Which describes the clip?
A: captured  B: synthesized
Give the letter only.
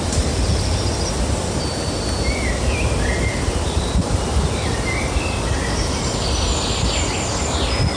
A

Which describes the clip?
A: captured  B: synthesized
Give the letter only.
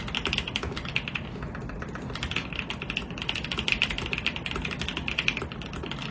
A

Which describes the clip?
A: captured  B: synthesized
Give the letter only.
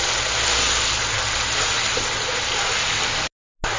A